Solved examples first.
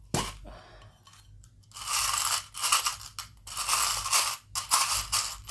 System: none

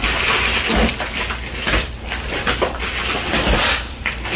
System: none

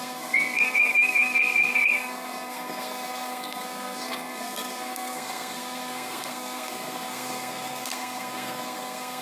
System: codec, SNAC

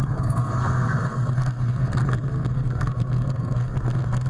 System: codec, SNAC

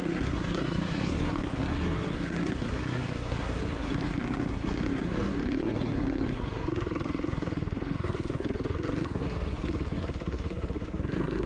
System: codec, SNAC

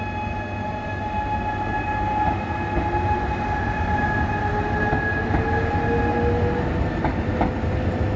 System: none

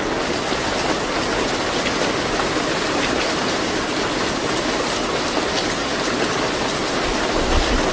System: none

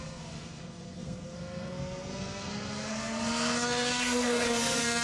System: codec, SNAC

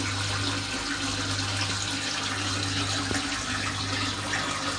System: none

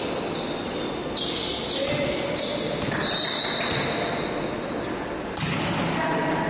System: none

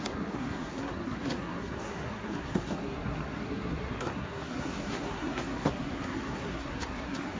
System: codec, SNAC